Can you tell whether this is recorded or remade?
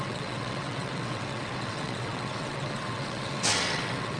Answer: remade